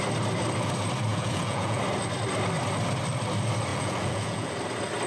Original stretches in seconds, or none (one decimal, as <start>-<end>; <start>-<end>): 0.0-1.1; 1.8-3.7; 4.5-5.1